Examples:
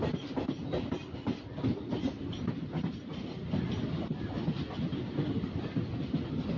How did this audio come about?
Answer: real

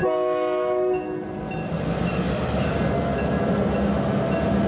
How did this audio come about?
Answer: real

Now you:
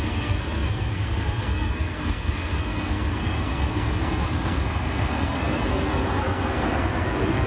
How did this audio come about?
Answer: fake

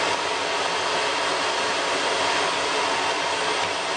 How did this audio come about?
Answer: real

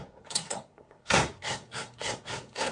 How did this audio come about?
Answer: fake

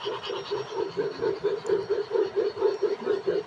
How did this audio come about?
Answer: real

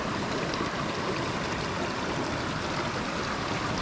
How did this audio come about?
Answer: real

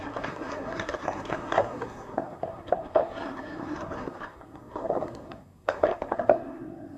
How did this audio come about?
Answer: fake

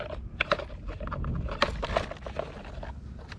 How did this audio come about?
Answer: real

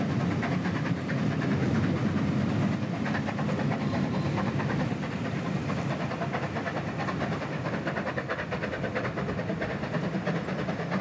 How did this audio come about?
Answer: real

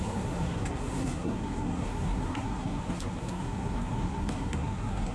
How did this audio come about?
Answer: fake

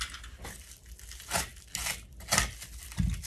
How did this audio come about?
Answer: real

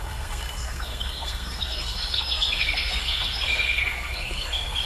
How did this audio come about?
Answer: fake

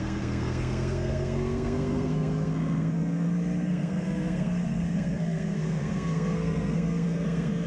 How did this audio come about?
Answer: fake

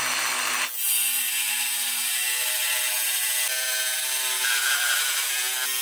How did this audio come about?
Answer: real